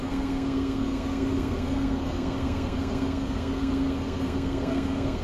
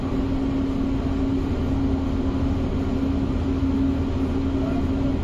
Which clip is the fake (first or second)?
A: first